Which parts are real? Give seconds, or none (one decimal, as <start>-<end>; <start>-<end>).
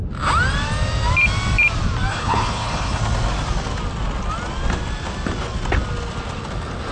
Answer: 0.0-2.1; 3.0-6.9